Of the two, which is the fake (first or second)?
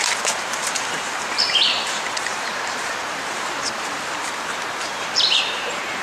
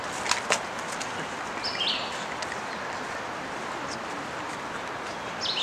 first